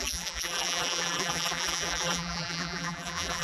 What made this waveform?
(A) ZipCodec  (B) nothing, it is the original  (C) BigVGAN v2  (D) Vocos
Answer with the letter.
C